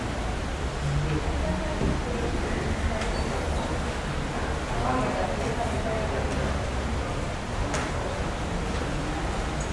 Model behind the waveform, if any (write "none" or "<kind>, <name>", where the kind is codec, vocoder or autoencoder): none